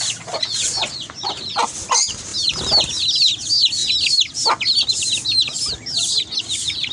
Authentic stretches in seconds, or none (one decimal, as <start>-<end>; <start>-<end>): 0.0-6.9